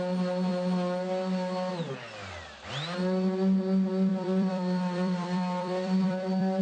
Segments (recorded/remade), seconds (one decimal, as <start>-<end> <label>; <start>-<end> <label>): 0.0-4.1 recorded; 4.1-6.6 remade